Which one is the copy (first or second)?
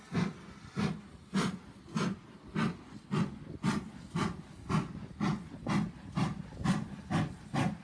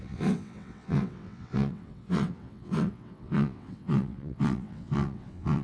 second